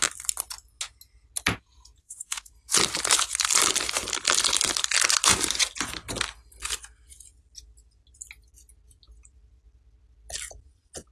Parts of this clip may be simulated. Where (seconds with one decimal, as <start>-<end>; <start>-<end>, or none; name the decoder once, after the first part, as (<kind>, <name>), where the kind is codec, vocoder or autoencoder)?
2.0-2.5 (autoencoder, DAC-VAE)